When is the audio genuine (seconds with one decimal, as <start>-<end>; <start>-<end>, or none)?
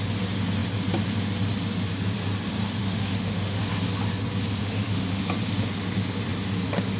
0.0-2.8; 3.6-4.6; 5.2-7.0